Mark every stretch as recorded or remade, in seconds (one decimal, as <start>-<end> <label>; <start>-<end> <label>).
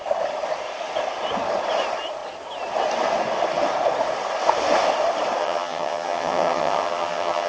0.0-5.4 recorded; 5.4-7.5 remade